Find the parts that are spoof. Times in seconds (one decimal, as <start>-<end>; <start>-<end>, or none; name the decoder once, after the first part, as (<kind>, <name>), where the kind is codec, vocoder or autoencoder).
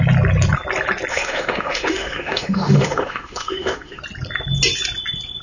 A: 1.1-4.0 (autoencoder, DAC-VAE)